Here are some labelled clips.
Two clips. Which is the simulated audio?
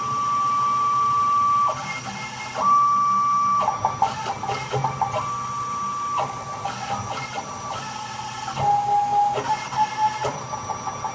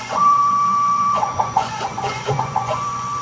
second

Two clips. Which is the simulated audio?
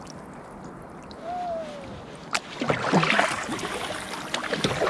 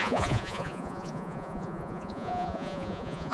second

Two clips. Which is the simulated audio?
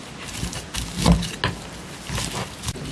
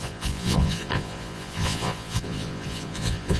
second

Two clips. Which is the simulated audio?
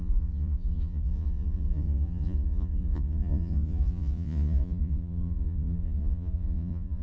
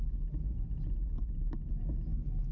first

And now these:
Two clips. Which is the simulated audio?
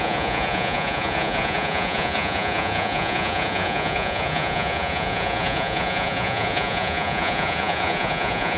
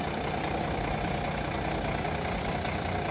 first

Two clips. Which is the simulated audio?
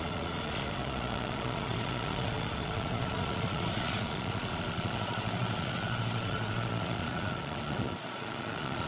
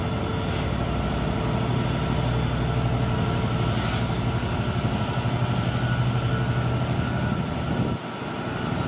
first